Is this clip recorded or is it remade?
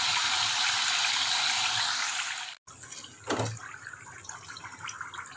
recorded